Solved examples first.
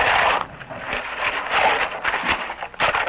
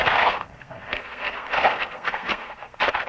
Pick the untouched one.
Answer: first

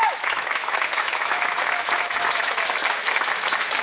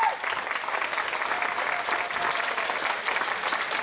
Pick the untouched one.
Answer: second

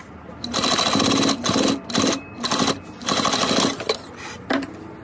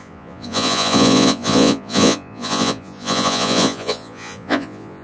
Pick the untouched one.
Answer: first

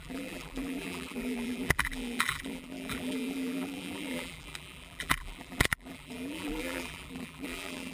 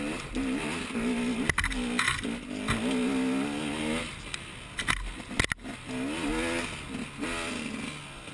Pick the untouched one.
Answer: second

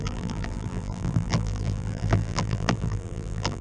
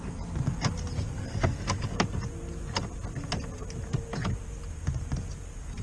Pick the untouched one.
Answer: second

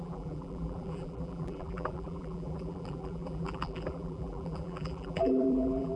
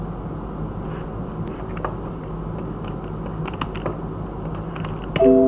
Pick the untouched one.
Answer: second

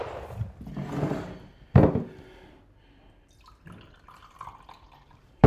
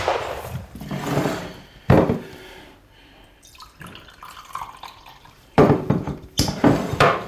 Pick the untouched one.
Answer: first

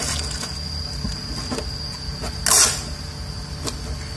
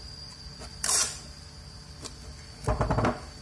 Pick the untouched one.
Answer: first